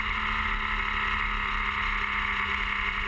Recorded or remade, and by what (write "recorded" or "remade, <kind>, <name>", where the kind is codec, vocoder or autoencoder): recorded